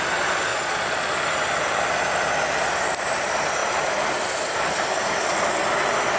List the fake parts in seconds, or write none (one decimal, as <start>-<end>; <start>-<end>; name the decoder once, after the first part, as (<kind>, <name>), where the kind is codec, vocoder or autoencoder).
0.5-1.1 (vocoder, Vocos)